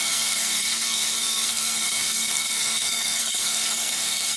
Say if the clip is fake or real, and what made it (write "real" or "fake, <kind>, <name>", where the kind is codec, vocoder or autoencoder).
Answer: fake, codec, SNAC